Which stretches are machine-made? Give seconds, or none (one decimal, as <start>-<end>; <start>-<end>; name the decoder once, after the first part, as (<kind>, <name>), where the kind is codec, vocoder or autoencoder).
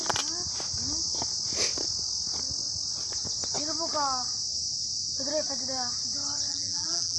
6.5-7.2 (vocoder, BigVGAN v2)